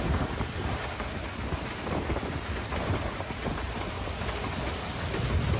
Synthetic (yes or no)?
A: no